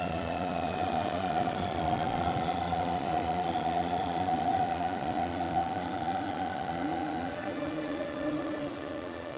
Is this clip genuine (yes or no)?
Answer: no